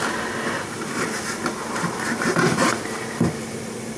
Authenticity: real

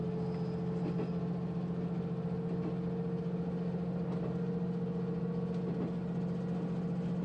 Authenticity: real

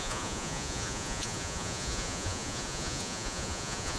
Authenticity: fake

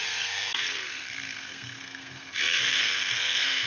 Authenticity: fake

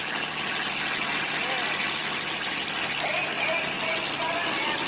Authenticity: real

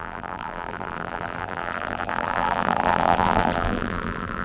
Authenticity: fake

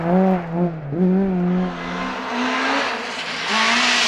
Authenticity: real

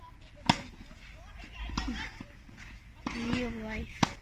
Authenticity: real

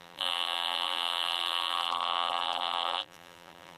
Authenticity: fake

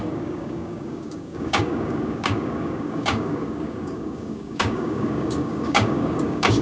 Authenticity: fake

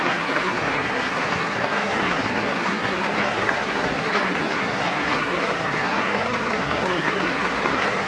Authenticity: fake